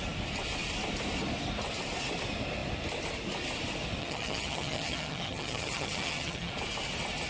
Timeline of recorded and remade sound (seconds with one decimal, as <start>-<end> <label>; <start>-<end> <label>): 0.0-4.0 recorded; 4.0-6.5 remade; 6.5-7.3 recorded